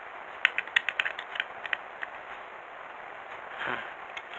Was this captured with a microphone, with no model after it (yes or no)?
yes